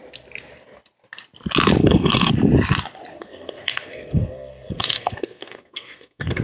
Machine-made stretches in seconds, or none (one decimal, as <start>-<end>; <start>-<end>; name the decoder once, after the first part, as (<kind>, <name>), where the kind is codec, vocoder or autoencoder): 1.8-2.3 (codec, SNAC); 3.1-6.4